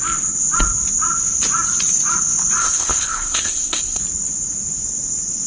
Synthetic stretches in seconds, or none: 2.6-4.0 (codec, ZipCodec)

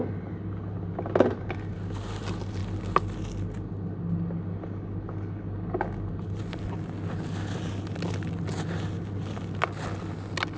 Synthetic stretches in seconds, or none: none

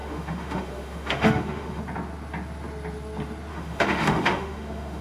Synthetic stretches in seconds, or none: 0.0-1.8 (autoencoder, DAC-VAE); 3.5-5.0

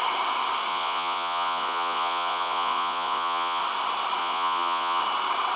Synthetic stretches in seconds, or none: 0.7-3.6 (vocoder, Vocos); 4.2-5.0

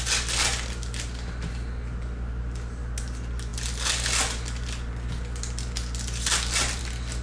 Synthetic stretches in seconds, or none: none

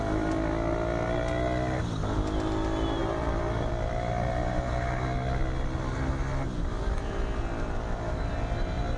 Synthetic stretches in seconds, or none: 3.0-3.7 (vocoder, BigVGAN v2)

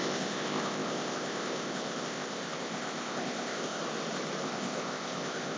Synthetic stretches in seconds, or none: 0.0-3.8 (codec, ZipCodec); 4.4-5.6